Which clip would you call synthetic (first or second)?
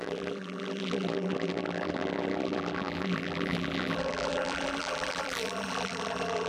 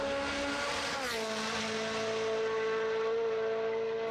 first